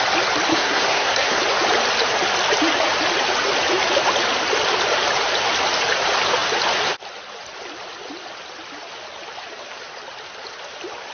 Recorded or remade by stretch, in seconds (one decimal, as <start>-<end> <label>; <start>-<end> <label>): 0.0-0.5 recorded; 0.5-1.4 remade; 1.4-11.1 recorded